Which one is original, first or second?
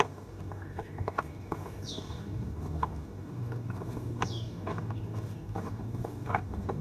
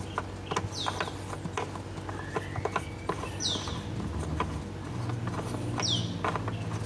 second